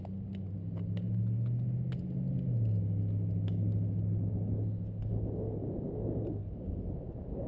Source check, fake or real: real